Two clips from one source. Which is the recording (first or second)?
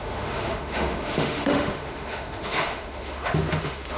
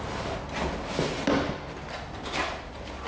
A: second